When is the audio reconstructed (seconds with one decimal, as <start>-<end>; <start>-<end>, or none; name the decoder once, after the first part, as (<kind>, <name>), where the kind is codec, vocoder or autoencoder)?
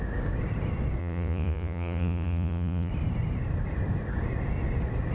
1.0-2.9 (vocoder, Vocos)